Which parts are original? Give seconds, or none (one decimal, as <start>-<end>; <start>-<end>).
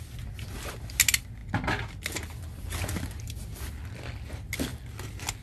0.0-5.4